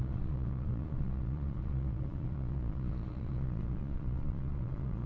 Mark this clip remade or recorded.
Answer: remade